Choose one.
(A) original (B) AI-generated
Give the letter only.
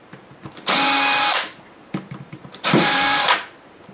B